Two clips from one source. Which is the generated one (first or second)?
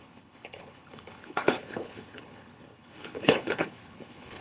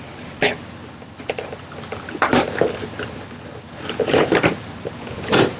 first